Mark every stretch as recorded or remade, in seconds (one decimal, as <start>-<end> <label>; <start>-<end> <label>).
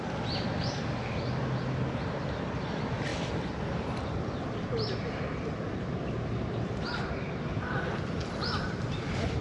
0.0-9.4 recorded